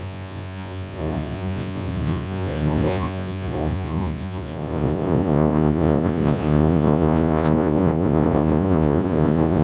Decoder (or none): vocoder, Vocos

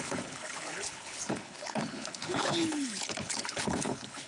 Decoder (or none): codec, HILCodec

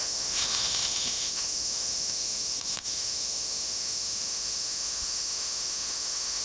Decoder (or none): autoencoder, DAC-VAE